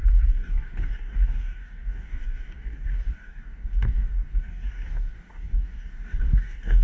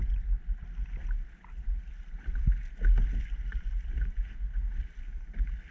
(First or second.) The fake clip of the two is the first